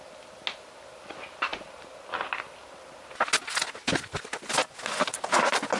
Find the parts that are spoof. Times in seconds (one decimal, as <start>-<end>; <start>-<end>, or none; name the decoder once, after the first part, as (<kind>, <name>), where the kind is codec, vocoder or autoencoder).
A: none